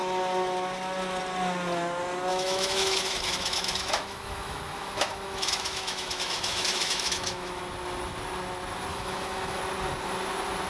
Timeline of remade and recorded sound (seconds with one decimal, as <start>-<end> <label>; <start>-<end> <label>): 0.0-2.3 recorded; 2.3-7.6 remade; 7.6-8.9 recorded; 8.9-9.6 remade; 9.6-10.7 recorded

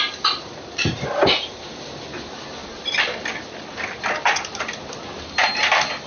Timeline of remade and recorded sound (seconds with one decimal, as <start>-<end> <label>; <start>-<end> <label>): 0.0-6.1 recorded

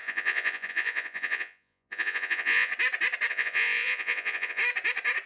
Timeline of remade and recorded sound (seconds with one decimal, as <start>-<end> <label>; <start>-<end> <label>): 0.0-2.7 remade; 2.7-3.3 recorded; 3.3-4.6 remade; 4.6-5.3 recorded

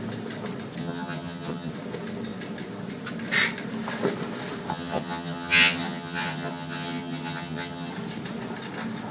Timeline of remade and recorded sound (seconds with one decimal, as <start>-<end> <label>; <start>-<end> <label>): 0.0-0.8 recorded; 0.8-1.7 remade; 1.7-4.7 recorded; 4.7-7.9 remade; 7.9-9.1 recorded

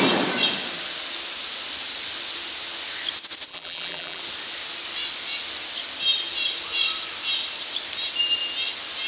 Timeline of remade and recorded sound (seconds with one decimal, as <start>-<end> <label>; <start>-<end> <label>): 0.0-3.5 recorded; 3.5-4.2 remade; 4.2-9.1 recorded